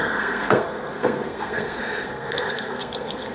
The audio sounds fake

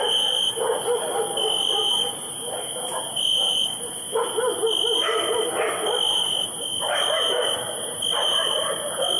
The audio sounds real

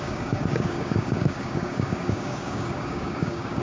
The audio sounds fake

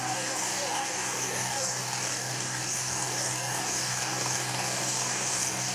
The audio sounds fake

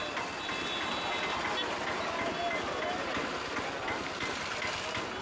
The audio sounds real